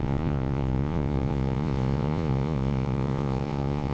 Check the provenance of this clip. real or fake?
fake